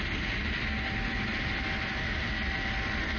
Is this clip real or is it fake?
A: real